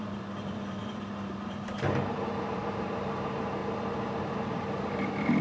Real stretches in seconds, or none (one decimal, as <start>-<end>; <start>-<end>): 3.6-4.2